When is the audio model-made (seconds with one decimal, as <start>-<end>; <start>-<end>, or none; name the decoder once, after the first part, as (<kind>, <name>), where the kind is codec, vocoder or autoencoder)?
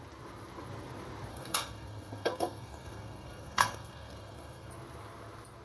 1.3-4.7 (codec, SNAC)